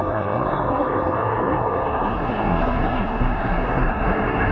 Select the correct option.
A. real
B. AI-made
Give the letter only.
B